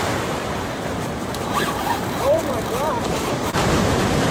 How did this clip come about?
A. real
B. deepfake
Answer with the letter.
B